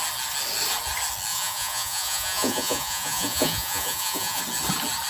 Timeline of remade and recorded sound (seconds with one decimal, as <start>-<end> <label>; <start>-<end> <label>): 0.0-1.3 recorded; 1.3-4.4 remade; 4.4-5.1 recorded